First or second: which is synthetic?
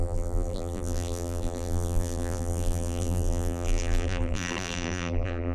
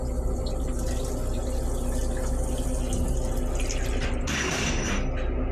first